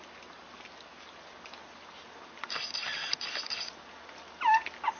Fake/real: real